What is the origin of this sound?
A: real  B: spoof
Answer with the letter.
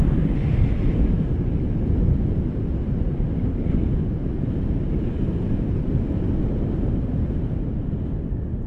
A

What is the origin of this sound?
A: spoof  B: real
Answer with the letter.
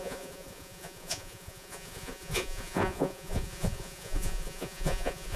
A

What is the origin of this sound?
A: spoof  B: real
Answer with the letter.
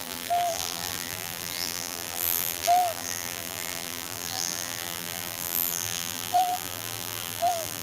A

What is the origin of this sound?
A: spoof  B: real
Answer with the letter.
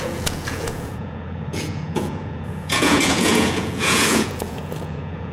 A